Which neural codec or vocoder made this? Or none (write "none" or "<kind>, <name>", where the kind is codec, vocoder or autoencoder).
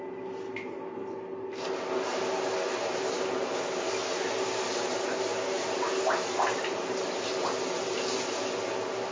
none